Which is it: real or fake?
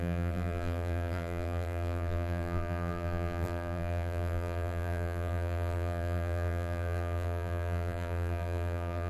fake